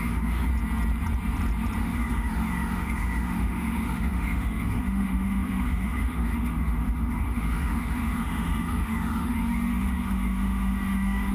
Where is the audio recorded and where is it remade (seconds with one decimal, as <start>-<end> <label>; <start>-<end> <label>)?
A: 0.0-0.5 remade; 0.5-1.8 recorded; 1.8-11.3 remade